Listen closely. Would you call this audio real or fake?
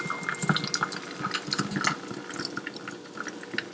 real